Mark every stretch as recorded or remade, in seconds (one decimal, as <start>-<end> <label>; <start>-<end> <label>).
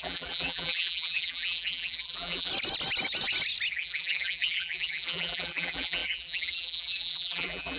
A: 0.0-2.5 remade; 2.5-3.7 recorded; 3.7-7.8 remade